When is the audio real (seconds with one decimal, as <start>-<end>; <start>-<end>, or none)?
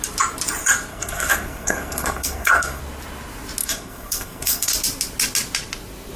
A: 0.0-0.9; 2.8-3.6; 4.7-6.2